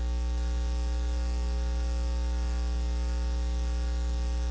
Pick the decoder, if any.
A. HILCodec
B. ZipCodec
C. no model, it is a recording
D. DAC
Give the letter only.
C